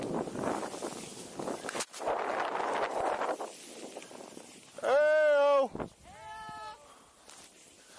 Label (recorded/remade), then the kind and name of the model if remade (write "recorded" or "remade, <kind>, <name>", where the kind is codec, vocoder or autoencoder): recorded